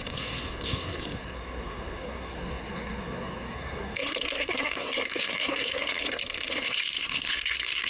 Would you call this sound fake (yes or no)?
yes